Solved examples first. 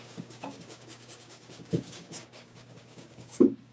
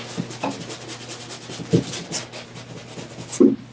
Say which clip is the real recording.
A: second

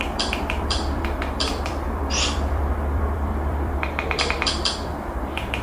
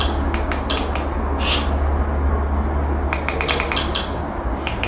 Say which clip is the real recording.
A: second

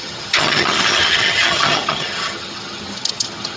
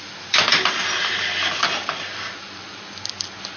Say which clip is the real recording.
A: second